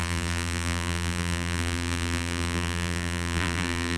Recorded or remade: remade